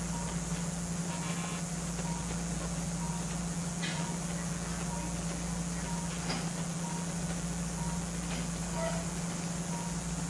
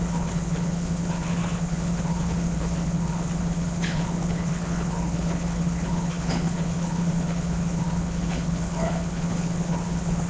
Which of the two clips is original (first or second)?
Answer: first